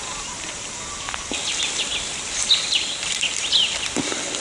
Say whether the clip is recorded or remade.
recorded